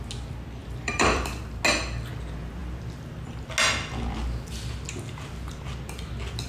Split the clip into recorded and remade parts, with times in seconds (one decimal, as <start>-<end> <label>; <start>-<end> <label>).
0.0-0.6 recorded; 0.6-1.4 remade; 1.4-6.5 recorded